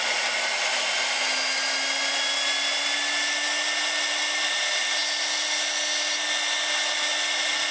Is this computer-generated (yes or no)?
no